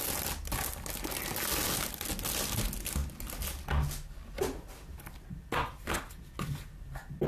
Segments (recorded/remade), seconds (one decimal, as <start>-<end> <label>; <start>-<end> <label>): 0.0-7.3 recorded

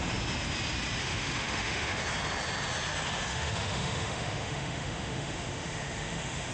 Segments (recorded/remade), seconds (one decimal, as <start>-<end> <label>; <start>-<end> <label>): 0.0-1.0 recorded; 1.0-2.0 remade; 2.0-3.3 recorded; 3.3-6.5 remade